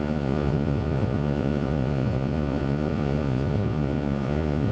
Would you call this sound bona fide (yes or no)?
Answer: no